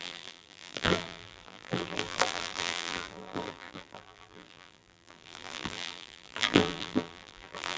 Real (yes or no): no